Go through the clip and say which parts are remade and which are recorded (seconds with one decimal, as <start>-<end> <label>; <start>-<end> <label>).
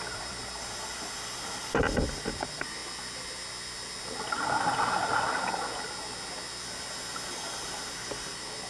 0.0-2.8 remade; 2.8-7.9 recorded; 7.9-8.7 remade